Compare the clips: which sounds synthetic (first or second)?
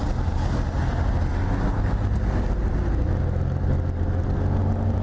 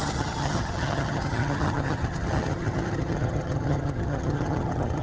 second